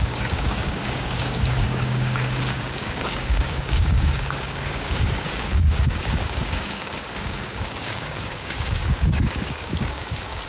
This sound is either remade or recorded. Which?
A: remade